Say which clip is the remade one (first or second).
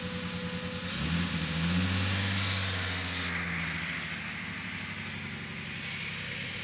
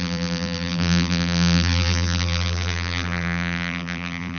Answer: second